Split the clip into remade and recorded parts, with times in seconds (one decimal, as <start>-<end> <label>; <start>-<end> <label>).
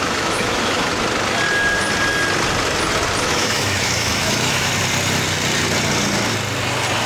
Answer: 0.0-0.9 remade; 0.9-3.2 recorded; 3.2-4.7 remade; 4.7-7.1 recorded